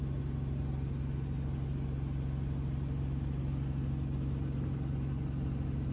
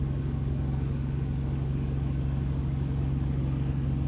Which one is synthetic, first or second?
second